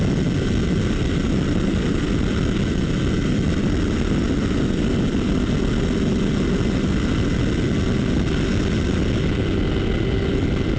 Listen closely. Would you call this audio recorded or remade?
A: recorded